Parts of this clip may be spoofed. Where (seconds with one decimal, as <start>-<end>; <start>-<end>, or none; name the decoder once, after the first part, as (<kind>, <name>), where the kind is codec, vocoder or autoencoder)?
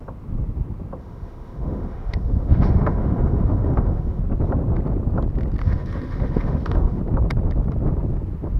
1.0-4.2 (autoencoder, DAC-VAE); 5.6-7.0